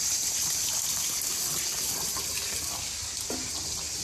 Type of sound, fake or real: real